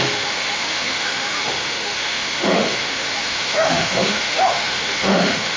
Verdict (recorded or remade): remade